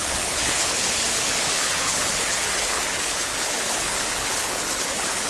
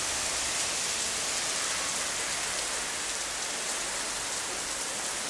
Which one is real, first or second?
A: second